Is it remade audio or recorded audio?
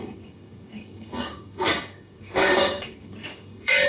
remade